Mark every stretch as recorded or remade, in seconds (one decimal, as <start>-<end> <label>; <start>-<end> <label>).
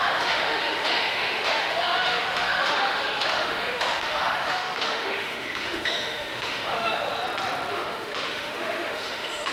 0.0-7.1 remade; 7.1-7.7 recorded; 7.7-9.5 remade